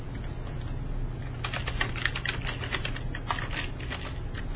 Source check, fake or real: real